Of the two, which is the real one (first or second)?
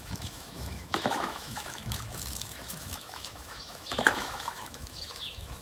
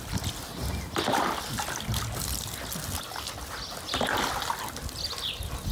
second